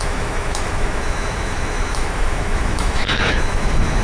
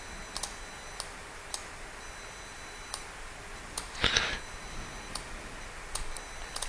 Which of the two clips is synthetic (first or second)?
first